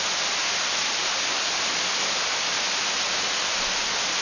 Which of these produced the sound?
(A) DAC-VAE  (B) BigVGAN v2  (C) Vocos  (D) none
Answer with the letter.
D